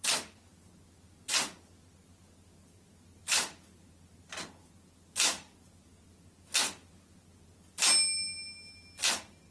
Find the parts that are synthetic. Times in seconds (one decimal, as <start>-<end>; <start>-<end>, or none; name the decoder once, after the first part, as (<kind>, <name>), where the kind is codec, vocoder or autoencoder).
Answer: none